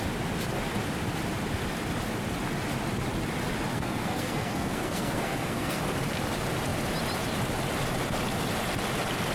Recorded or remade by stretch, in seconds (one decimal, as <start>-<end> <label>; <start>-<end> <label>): 0.0-3.7 recorded; 3.7-5.8 remade; 5.8-9.3 recorded